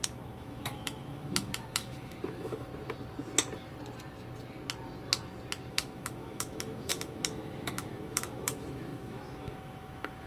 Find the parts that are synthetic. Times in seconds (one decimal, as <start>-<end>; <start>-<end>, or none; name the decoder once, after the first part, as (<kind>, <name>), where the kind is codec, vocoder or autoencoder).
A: 0.0-2.7 (autoencoder, DAC-VAE); 5.7-10.3